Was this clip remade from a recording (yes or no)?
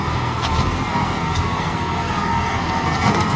yes